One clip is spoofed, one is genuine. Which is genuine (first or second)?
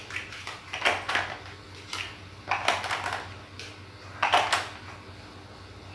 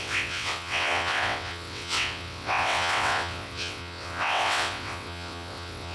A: first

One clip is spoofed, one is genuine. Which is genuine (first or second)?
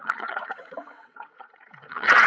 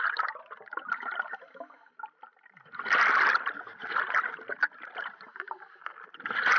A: second